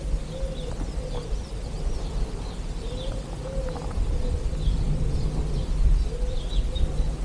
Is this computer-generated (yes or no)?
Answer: no